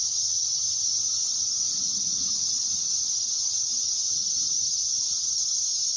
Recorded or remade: remade